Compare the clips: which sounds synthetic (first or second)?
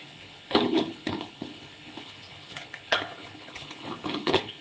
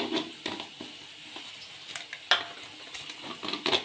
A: first